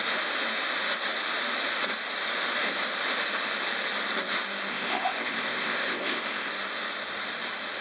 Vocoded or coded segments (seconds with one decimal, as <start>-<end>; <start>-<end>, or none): 4.7-6.5

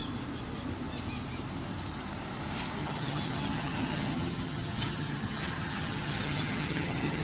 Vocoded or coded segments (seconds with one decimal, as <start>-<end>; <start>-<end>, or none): 2.8-7.2

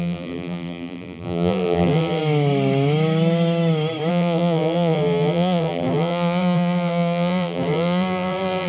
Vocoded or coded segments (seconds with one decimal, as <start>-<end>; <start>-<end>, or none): 0.0-2.2; 4.1-8.7

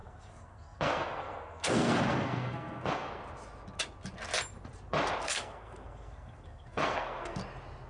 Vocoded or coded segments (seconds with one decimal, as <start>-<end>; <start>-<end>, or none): 0.0-3.2; 5.2-7.4

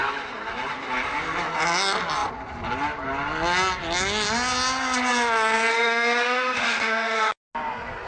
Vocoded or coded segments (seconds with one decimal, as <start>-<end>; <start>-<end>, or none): 5.7-7.3

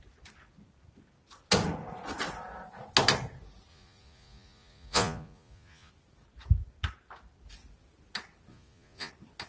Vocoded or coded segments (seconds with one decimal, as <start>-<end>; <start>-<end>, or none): 3.7-5.9; 8.5-9.1

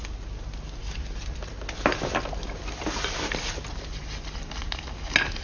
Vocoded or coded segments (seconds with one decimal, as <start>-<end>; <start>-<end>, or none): none

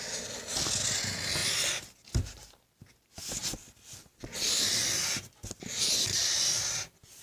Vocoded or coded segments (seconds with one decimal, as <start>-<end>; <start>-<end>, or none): none